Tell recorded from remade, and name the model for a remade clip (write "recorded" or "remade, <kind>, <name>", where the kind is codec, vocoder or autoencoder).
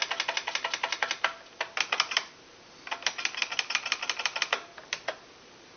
recorded